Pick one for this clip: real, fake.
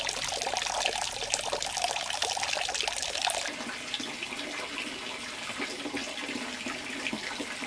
real